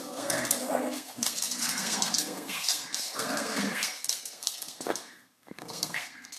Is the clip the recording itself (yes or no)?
no